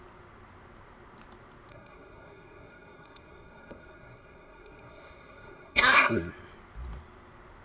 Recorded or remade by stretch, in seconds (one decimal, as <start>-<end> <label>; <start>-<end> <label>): 0.0-1.7 recorded; 1.7-6.3 remade; 6.3-7.6 recorded